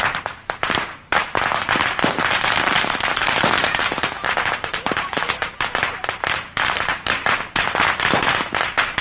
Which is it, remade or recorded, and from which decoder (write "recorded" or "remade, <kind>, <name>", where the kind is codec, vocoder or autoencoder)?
remade, vocoder, BigVGAN v2